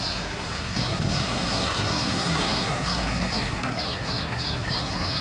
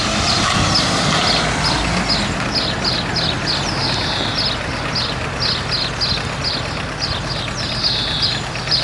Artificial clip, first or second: first